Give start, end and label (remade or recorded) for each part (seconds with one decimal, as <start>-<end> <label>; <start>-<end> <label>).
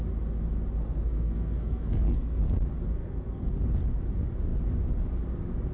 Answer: 0.0-0.8 recorded; 0.8-2.4 remade; 2.4-3.0 recorded; 3.0-3.5 remade; 3.5-5.7 recorded